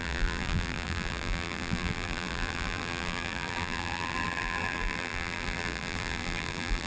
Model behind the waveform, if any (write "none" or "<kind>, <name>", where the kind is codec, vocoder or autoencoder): vocoder, BigVGAN v2